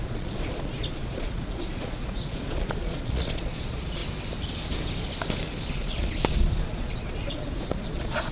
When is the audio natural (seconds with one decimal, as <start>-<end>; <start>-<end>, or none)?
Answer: 4.0-5.7